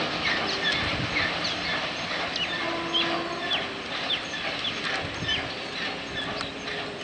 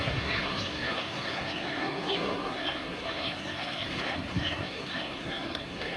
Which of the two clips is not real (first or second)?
second